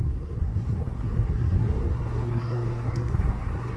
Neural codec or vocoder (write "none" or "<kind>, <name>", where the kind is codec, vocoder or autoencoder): codec, SNAC